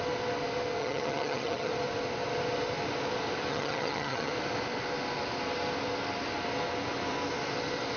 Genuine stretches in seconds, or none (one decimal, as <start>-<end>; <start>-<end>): 0.0-0.8; 1.7-3.5; 4.3-8.0